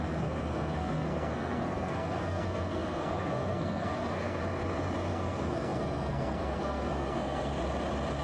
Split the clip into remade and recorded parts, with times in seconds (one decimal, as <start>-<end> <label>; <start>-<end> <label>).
0.0-4.4 remade; 4.4-5.1 recorded; 5.1-7.5 remade; 7.5-8.2 recorded